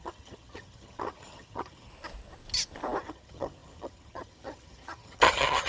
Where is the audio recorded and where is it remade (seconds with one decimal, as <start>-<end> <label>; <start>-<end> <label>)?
0.0-1.9 remade; 1.9-3.0 recorded; 3.0-5.7 remade

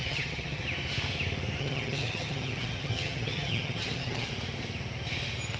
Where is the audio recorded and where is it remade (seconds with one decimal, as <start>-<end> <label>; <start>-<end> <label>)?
0.0-0.6 remade; 0.6-1.6 recorded; 1.6-4.3 remade; 4.3-5.6 recorded

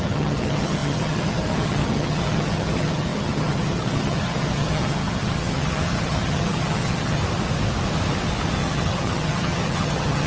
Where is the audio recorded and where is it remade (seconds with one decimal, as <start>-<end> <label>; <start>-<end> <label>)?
0.0-7.2 remade; 7.2-8.6 recorded; 8.6-10.3 remade

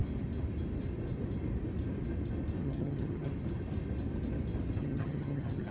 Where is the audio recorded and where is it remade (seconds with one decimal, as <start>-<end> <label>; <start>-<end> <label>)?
0.0-2.6 recorded; 2.6-3.3 remade; 3.3-4.8 recorded; 4.8-5.7 remade

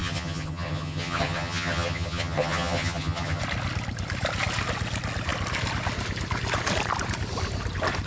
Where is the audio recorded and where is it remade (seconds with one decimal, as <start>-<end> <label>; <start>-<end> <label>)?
0.0-3.4 remade; 3.4-8.1 recorded

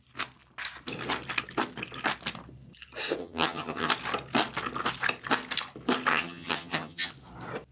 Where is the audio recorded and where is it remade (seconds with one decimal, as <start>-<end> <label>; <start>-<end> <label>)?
0.0-3.2 recorded; 3.2-3.9 remade; 3.9-6.1 recorded; 6.1-7.1 remade; 7.1-7.7 recorded

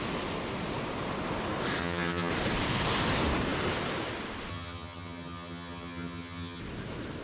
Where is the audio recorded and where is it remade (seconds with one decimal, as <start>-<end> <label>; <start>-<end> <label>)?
0.0-1.8 recorded; 1.8-2.3 remade; 2.3-4.5 recorded; 4.5-6.6 remade; 6.6-7.2 recorded

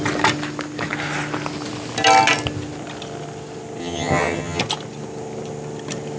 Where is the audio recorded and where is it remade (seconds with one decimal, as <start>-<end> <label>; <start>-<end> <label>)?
0.0-3.8 recorded; 3.8-4.6 remade; 4.6-6.2 recorded